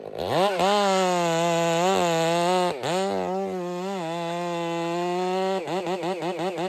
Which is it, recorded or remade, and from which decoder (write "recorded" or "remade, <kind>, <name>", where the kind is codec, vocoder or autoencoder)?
recorded